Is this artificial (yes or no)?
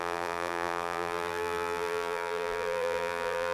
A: yes